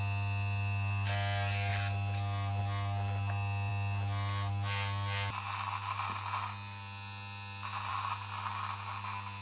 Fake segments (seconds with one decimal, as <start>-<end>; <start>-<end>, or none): none